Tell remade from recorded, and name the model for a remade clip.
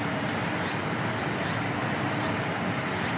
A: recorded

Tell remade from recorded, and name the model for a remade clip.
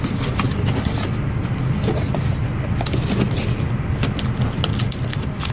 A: recorded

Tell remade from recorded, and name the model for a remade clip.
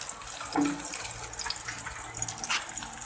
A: recorded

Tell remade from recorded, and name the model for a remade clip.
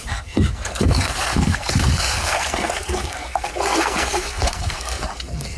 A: remade, codec, SNAC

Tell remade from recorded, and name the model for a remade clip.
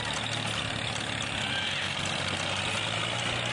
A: recorded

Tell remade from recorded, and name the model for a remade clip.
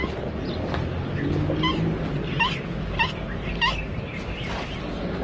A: recorded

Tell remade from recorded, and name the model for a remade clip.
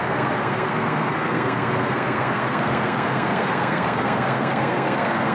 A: remade, codec, SNAC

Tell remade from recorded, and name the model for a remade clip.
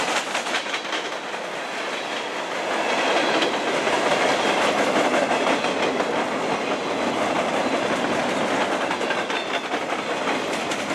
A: recorded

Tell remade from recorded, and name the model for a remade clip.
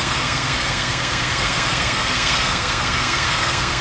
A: remade, codec, SNAC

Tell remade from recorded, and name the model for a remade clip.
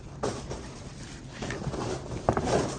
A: recorded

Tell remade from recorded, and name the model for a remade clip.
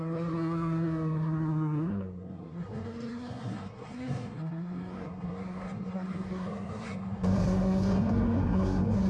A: remade, codec, SNAC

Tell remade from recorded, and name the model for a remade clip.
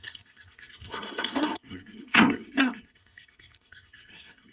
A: remade, codec, SNAC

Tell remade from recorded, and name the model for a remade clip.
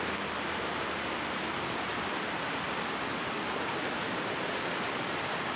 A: recorded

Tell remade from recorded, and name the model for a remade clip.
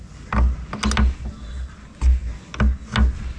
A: recorded